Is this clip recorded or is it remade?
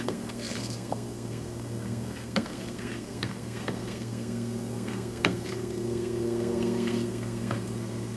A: remade